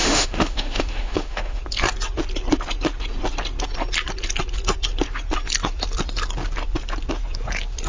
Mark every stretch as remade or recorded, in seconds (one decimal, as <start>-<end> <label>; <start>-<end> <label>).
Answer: 0.0-1.6 remade; 1.6-7.9 recorded